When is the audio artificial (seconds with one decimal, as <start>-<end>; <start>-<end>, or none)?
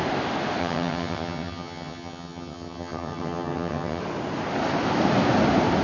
0.6-4.0